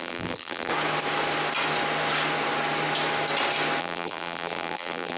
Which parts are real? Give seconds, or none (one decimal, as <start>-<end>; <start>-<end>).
0.7-3.8